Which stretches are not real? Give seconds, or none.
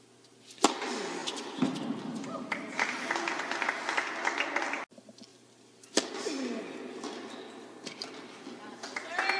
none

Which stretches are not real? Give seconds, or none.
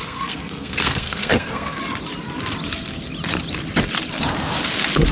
0.0-1.8 (codec, SNAC)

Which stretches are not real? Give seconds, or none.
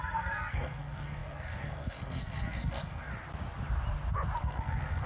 0.0-3.1 (codec, SNAC); 4.4-5.1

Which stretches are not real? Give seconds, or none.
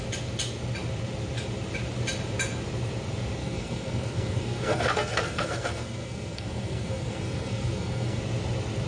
3.4-8.2 (codec, SNAC)